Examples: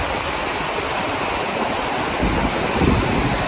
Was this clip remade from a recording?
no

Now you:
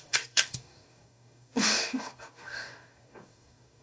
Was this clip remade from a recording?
yes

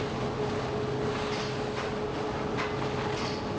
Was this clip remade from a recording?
no